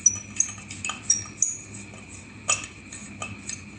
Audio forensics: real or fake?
real